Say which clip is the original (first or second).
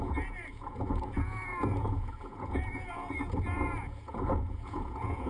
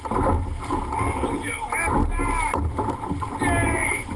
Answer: second